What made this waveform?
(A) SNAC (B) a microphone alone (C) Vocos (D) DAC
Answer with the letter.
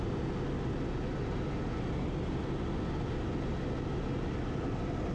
B